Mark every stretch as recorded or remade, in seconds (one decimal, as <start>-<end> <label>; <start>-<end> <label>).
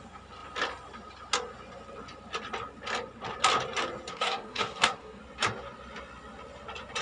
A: 0.0-4.1 recorded; 4.1-5.2 remade; 5.2-7.0 recorded